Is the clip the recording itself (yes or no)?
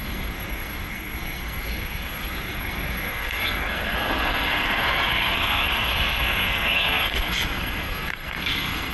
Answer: no